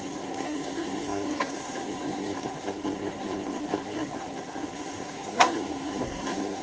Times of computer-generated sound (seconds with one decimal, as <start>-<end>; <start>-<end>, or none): 0.0-6.6